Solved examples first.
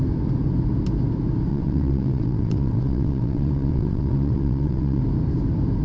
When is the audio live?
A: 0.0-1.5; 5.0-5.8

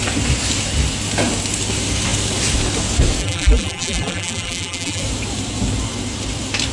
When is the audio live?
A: 0.0-3.2; 5.0-6.7

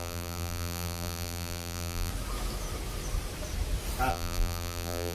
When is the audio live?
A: 2.1-4.1

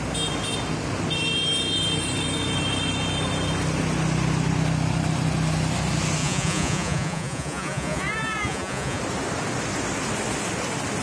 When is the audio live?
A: 0.0-6.2; 9.0-11.0

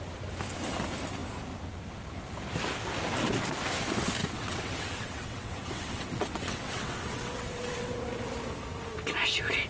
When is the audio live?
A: 0.0-4.2; 7.9-9.7

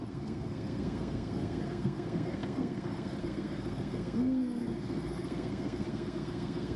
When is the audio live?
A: none

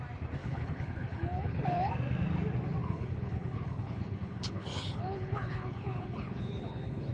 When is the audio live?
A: 0.0-0.4; 1.9-2.8

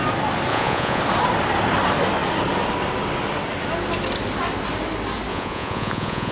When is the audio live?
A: 0.0-0.5; 1.0-5.3